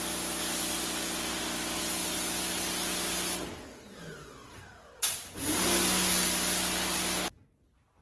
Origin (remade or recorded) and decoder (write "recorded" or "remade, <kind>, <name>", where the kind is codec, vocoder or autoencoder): recorded